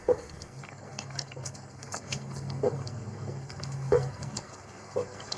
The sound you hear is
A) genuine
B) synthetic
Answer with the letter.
B